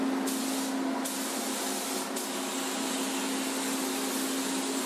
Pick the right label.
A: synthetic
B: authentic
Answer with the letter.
B